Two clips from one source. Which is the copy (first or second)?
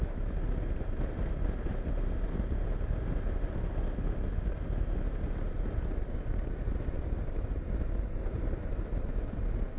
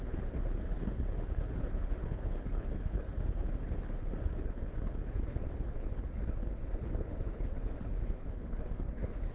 second